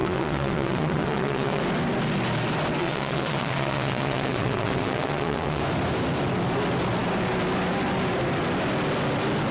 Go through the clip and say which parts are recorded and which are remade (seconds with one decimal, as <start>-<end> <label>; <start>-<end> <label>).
0.0-1.6 remade; 1.6-2.8 recorded; 2.8-5.6 remade; 5.6-9.5 recorded